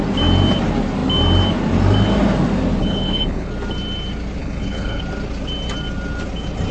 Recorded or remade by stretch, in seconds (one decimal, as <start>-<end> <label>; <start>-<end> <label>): 0.0-2.8 recorded; 2.8-3.5 remade; 3.5-4.4 recorded; 4.4-5.0 remade; 5.0-6.7 recorded